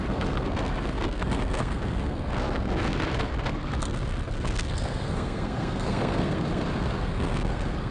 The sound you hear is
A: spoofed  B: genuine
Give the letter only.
A